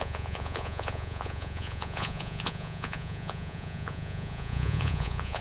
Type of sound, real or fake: fake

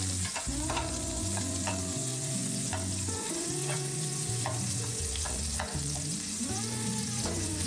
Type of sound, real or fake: fake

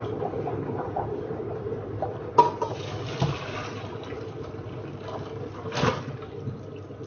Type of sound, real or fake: real